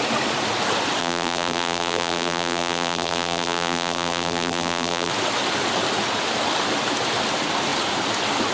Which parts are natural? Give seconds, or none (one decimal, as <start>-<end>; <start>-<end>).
0.0-1.0; 5.1-8.5